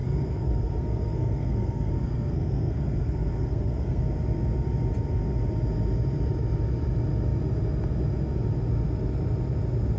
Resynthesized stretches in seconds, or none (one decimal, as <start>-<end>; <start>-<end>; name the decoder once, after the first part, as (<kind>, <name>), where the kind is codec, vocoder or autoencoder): 0.0-4.0 (codec, SNAC)